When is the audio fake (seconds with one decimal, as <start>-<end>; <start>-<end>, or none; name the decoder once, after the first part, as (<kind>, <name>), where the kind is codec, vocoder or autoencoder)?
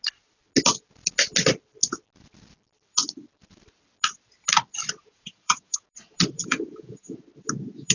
5.0-5.9 (vocoder, Vocos); 6.4-7.2